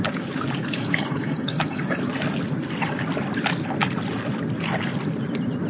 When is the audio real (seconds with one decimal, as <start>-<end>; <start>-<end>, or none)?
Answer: 2.1-5.7